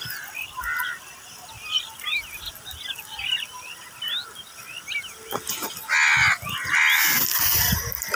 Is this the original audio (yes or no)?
yes